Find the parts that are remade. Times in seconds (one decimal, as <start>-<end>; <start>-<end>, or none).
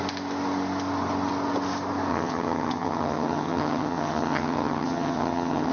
2.1-5.7